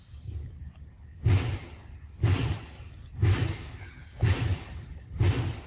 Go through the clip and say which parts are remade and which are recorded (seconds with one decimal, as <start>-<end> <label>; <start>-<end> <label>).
0.0-4.5 recorded; 4.5-5.1 remade; 5.1-5.7 recorded